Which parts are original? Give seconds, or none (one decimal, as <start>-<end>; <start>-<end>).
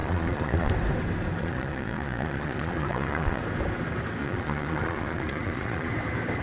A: 0.7-1.4; 3.4-4.2; 5.9-6.4